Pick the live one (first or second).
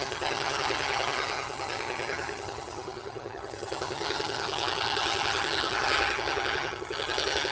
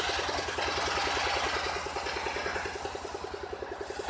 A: second